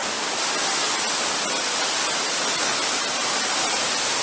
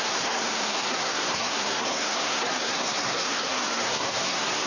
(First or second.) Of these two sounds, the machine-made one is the second